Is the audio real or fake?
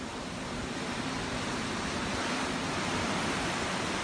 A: real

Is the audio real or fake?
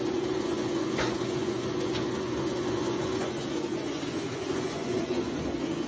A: fake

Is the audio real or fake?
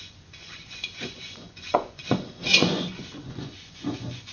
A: fake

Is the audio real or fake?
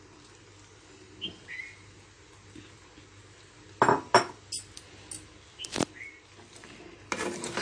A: real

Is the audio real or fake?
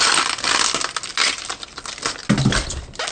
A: real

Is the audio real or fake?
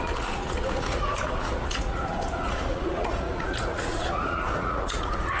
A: fake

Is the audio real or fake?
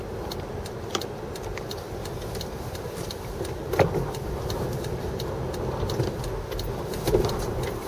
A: real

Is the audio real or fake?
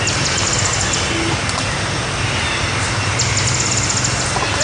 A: real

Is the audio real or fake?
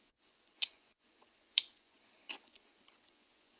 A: fake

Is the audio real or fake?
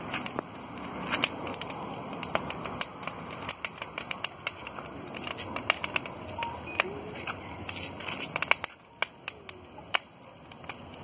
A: real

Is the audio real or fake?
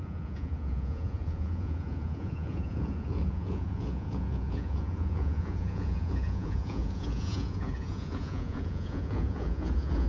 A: fake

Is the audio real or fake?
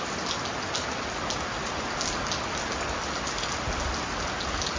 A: real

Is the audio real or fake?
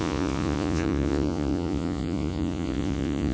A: fake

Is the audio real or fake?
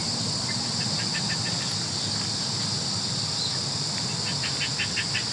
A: real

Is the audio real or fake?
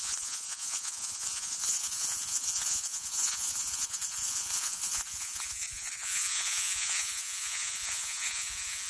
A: fake